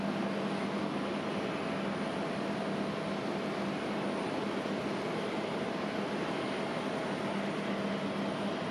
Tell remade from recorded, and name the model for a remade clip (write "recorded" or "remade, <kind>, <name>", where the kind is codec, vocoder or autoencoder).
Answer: recorded